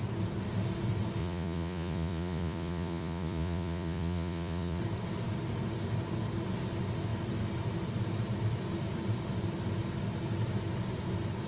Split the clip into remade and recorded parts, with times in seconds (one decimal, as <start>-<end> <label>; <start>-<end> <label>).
0.0-1.2 recorded; 1.2-4.8 remade; 4.8-11.5 recorded